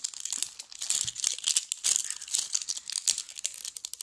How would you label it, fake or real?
real